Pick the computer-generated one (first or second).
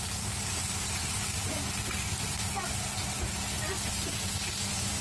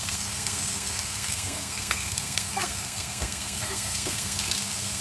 second